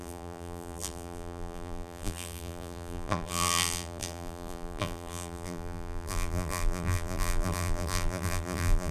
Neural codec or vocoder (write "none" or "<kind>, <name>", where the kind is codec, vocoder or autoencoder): vocoder, BigVGAN v2